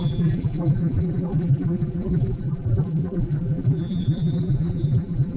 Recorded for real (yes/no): no